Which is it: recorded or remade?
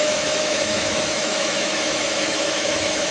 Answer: remade